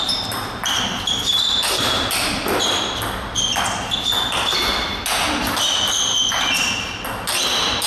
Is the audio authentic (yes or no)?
yes